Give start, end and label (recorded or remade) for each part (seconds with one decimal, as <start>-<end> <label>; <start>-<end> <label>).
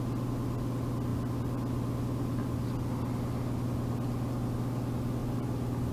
0.0-5.9 recorded